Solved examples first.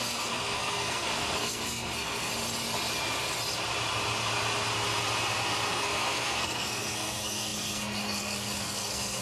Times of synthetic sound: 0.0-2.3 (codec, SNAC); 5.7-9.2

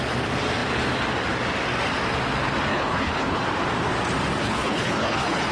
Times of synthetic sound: 2.7-3.4 (codec, HILCodec); 4.4-5.5

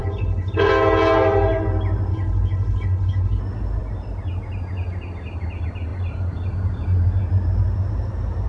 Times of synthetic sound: 0.0-0.7 (codec, HILCodec); 2.1-3.4

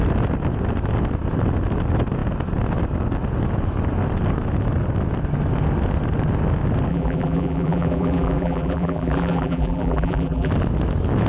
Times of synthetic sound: 6.9-10.5 (vocoder, BigVGAN v2)

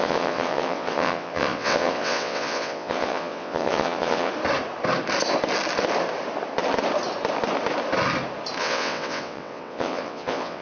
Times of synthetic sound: 0.0-4.3 (vocoder, WaveNeXt); 8.6-10.6

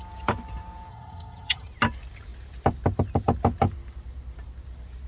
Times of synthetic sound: 0.9-1.7 (vocoder, HiFi-GAN)